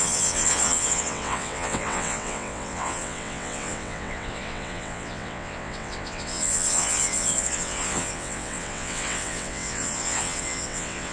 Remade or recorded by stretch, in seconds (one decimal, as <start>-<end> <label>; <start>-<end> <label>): 0.0-11.1 remade